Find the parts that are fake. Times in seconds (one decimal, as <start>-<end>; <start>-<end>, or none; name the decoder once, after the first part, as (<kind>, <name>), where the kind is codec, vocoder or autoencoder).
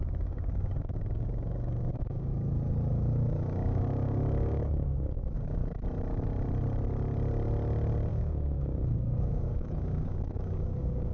0.0-2.3 (codec, DAC); 2.9-5.6; 8.1-11.1